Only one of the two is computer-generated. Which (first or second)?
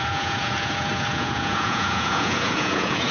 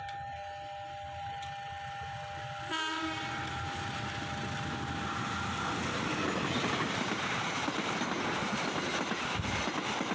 first